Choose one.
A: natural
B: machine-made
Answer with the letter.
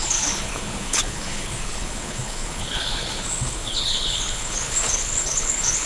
B